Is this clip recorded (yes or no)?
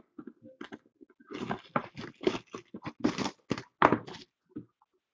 yes